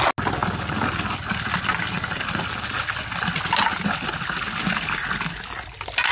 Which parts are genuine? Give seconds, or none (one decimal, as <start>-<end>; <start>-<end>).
0.0-6.1